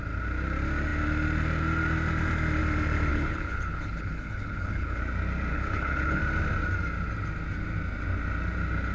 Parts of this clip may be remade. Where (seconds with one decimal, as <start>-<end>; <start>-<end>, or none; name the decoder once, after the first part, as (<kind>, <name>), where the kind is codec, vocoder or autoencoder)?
3.1-5.0 (codec, HILCodec); 5.5-6.2